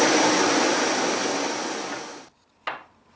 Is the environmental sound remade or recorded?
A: recorded